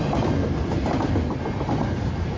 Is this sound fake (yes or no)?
no